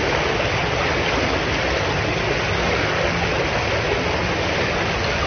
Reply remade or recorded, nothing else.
recorded